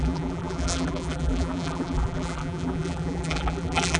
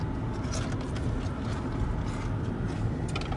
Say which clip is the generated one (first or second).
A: first